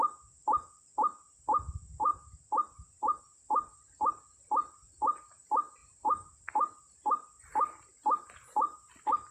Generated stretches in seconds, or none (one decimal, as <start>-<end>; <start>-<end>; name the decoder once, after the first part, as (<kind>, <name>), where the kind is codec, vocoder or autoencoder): 5.8-9.3 (vocoder, BigVGAN v2)